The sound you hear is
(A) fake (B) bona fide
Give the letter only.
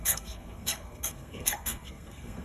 A